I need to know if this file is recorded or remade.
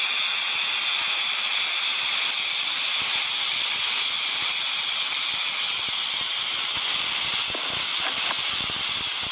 recorded